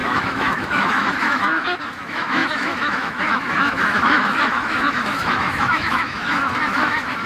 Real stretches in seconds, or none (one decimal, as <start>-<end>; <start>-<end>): none